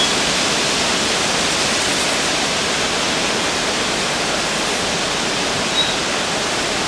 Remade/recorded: recorded